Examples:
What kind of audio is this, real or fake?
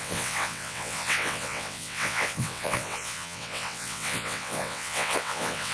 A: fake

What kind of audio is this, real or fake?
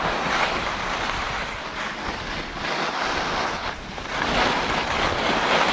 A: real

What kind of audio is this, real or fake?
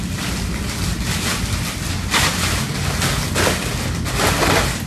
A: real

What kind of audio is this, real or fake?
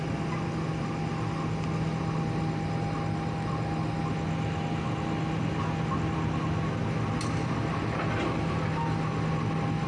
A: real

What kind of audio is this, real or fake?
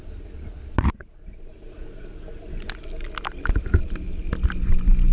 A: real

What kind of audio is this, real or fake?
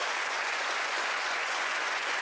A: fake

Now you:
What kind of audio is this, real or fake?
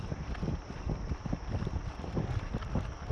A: real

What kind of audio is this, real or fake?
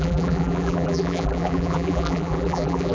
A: fake